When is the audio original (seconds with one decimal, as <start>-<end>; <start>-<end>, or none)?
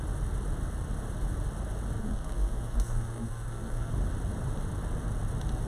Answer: 0.0-2.0; 3.9-5.7